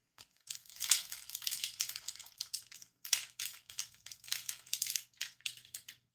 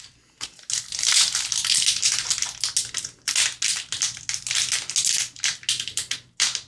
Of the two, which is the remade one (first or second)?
first